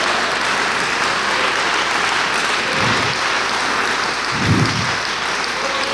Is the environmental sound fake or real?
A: real